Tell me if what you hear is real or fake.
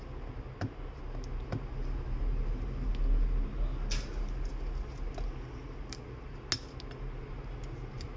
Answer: real